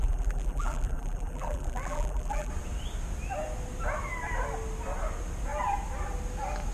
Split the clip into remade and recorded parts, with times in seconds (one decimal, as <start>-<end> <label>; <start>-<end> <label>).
0.0-2.5 remade; 2.5-6.7 recorded

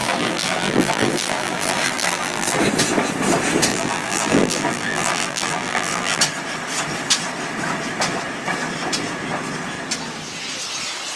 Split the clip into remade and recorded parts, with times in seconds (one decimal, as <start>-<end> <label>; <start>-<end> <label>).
0.0-2.6 remade; 2.6-3.7 recorded; 3.7-6.2 remade; 6.2-11.2 recorded

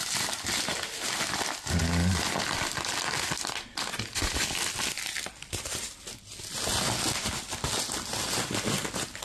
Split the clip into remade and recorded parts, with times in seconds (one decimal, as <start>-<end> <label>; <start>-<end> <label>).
0.0-9.2 recorded

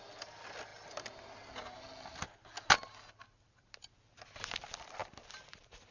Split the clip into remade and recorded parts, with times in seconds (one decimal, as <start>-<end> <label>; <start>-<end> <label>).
0.0-5.9 recorded

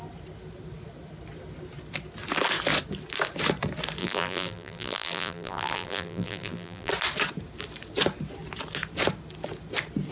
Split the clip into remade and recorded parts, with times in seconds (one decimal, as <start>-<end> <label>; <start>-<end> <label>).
0.0-4.0 recorded; 4.0-6.9 remade; 6.9-10.1 recorded

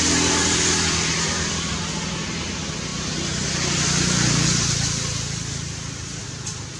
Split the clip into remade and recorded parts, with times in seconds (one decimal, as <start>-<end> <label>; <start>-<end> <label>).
0.0-0.4 recorded; 0.4-1.8 remade; 1.8-6.8 recorded

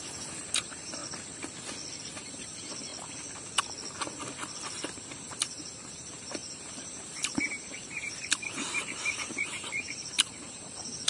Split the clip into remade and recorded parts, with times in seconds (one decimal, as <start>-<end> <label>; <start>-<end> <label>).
0.0-1.0 remade; 1.0-2.0 recorded; 2.0-2.9 remade; 2.9-5.2 recorded; 5.2-11.1 remade

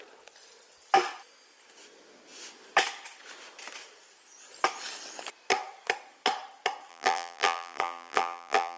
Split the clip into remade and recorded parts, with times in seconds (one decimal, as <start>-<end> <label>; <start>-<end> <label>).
0.0-6.9 recorded; 6.9-8.8 remade